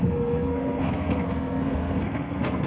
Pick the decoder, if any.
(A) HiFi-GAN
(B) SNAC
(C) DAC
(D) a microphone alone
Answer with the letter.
B